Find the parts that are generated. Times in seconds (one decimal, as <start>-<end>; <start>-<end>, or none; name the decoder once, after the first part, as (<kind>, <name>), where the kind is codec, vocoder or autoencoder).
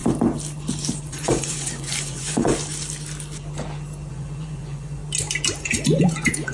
1.0-2.5 (vocoder, Vocos); 4.1-5.0; 5.6-6.5